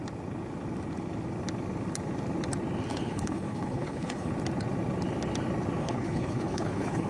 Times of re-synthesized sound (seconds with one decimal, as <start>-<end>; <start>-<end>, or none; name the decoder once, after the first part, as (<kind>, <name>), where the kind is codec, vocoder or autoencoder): 2.9-4.3 (codec, HILCodec); 5.8-7.1